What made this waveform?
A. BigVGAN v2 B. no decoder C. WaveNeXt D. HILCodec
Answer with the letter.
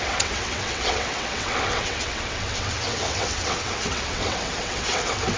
C